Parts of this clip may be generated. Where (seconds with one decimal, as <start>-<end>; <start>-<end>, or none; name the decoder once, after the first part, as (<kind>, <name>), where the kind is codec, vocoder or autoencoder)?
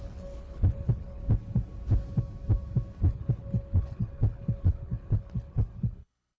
0.0-1.2 (codec, HILCodec); 3.0-6.4